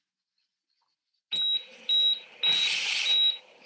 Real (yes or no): yes